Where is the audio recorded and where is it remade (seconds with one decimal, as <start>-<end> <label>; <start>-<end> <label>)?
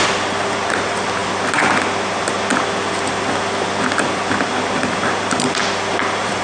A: 0.0-6.4 recorded